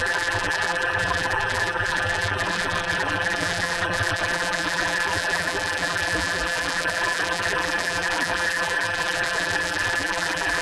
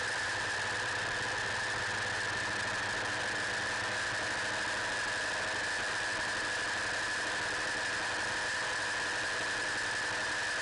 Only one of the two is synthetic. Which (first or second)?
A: first